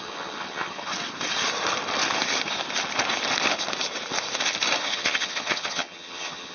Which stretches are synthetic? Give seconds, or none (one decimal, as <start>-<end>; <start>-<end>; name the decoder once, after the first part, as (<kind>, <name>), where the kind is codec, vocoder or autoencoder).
0.0-0.9 (vocoder, HiFi-GAN); 4.8-6.5